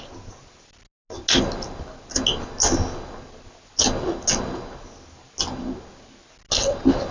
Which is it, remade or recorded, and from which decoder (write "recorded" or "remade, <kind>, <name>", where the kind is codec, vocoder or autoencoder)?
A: recorded